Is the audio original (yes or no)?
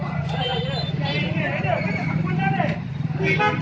yes